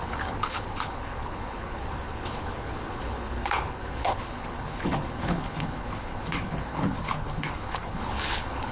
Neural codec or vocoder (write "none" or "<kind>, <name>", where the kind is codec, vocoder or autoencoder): codec, HILCodec